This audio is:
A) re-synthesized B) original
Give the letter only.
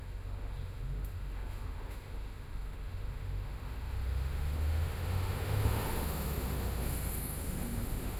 A